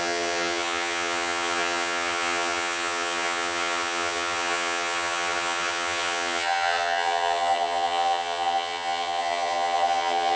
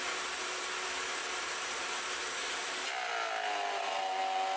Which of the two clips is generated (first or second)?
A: first